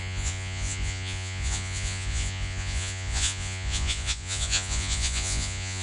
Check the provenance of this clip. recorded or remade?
remade